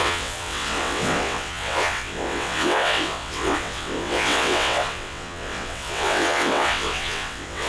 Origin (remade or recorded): remade